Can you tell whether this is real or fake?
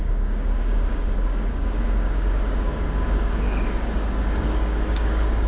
fake